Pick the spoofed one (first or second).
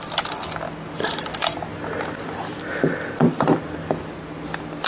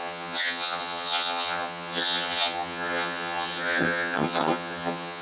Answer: second